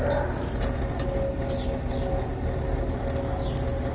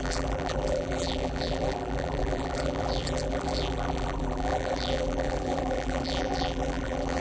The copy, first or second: second